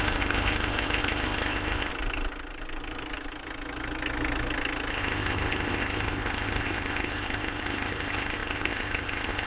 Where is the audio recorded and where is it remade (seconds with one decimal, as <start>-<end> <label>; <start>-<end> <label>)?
0.0-1.9 remade; 1.9-4.9 recorded; 4.9-9.5 remade